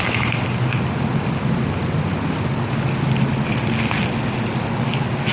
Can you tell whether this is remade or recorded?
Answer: recorded